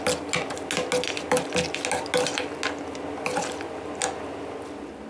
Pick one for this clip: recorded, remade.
recorded